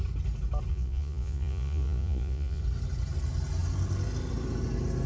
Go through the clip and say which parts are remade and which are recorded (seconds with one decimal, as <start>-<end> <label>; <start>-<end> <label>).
0.0-0.7 recorded; 0.7-2.6 remade; 2.6-5.1 recorded